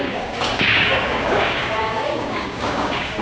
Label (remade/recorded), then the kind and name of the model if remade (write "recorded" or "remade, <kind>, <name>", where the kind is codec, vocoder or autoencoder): remade, codec, DAC